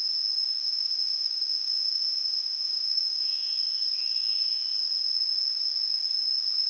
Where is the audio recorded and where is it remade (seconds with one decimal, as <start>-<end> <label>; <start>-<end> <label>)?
0.0-0.6 recorded; 0.6-3.5 remade; 3.5-6.7 recorded

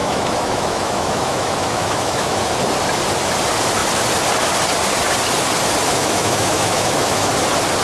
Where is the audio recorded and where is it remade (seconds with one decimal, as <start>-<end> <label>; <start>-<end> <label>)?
0.0-2.5 remade; 2.5-5.9 recorded; 5.9-7.3 remade; 7.3-7.8 recorded

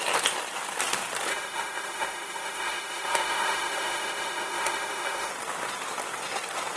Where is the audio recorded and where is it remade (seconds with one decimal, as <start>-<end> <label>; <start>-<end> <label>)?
0.0-1.3 recorded; 1.3-5.3 remade; 5.3-6.8 recorded

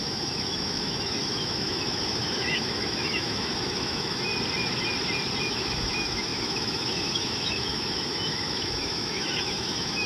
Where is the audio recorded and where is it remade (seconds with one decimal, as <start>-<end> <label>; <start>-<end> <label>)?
0.0-4.3 remade; 4.3-5.4 recorded; 5.4-10.1 remade

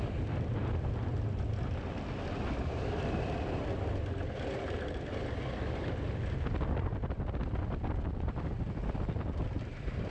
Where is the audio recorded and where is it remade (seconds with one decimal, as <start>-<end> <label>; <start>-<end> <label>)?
0.0-10.1 recorded

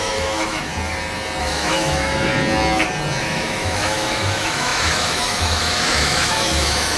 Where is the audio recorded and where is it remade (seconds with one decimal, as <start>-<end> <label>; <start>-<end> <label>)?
0.0-0.7 remade; 0.7-1.4 recorded; 1.4-2.3 remade; 2.3-3.2 recorded; 3.2-7.0 remade